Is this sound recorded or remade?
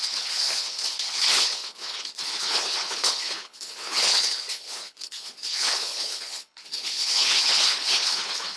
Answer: remade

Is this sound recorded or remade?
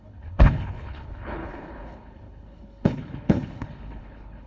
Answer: remade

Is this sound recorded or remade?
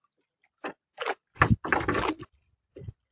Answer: recorded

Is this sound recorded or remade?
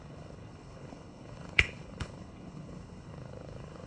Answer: remade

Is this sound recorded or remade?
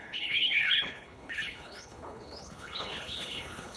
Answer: remade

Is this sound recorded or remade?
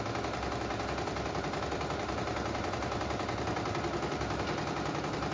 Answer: recorded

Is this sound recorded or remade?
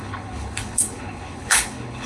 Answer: remade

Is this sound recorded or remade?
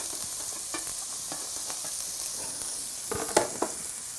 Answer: recorded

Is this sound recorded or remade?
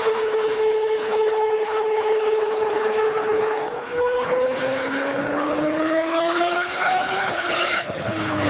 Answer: remade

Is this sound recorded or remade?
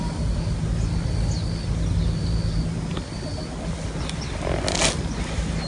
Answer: recorded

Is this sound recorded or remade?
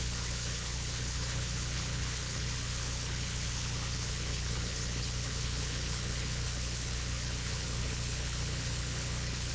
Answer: remade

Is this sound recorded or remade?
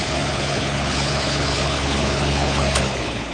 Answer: remade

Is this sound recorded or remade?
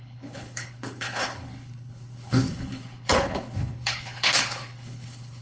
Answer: remade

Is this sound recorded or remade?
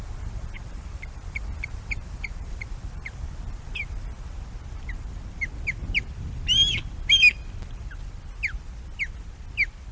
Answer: recorded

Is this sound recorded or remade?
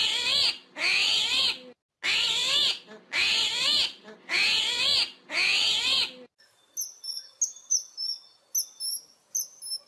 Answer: recorded